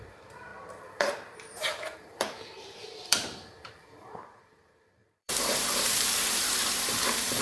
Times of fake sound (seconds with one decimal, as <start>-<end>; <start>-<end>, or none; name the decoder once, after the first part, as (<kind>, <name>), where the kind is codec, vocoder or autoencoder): 0.0-7.4 (vocoder, BigVGAN v2)